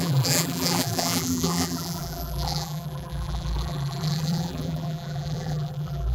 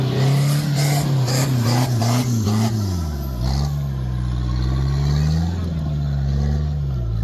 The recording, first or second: second